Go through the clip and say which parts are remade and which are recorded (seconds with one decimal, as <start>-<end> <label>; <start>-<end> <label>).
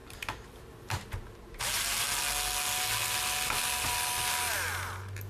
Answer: 0.0-2.2 remade; 2.2-5.3 recorded